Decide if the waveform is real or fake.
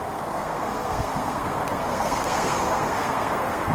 fake